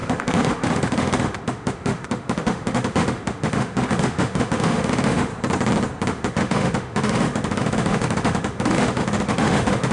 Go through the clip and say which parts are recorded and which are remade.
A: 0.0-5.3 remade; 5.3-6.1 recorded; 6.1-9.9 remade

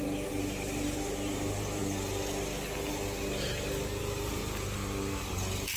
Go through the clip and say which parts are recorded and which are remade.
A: 0.0-1.8 remade; 1.8-4.0 recorded; 4.0-4.4 remade; 4.4-5.8 recorded

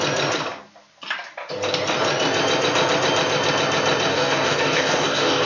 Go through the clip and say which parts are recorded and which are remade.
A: 0.0-4.1 recorded; 4.1-5.5 remade

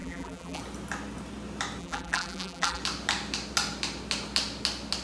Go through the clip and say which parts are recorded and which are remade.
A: 0.0-0.6 remade; 0.6-1.8 recorded; 1.8-2.8 remade; 2.8-5.0 recorded